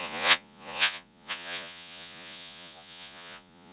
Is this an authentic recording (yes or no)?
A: no